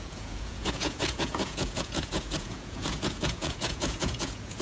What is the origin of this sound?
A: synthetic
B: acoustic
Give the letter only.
A